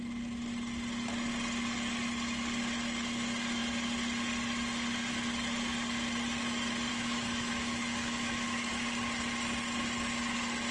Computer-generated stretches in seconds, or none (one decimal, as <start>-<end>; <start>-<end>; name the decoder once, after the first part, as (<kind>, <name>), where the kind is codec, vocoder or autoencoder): 6.9-8.7 (autoencoder, DAC-VAE)